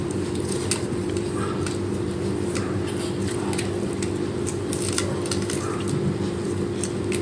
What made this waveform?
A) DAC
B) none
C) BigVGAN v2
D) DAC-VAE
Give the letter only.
B